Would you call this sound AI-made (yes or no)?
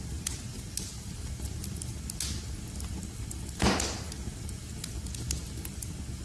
no